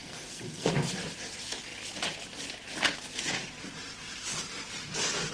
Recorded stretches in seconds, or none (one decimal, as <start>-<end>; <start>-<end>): 0.9-5.3